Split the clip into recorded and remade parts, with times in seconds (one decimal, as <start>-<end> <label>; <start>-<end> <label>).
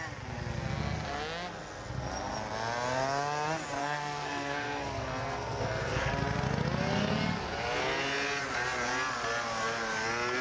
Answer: 0.0-3.8 recorded; 3.8-6.1 remade; 6.1-10.4 recorded